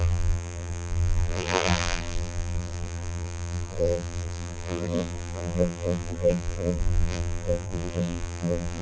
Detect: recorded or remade remade